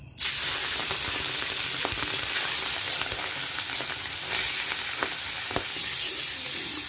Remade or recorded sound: recorded